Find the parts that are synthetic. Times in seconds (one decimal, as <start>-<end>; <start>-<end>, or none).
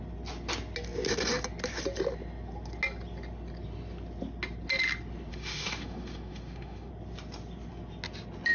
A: 5.3-6.9